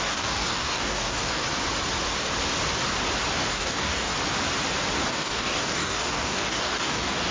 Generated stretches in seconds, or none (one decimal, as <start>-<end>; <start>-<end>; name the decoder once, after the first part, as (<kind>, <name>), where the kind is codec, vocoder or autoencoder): 0.0-1.4 (codec, DAC); 3.5-4.1; 5.1-7.3